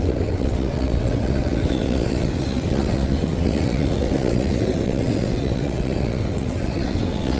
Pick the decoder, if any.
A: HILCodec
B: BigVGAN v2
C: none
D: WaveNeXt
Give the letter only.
D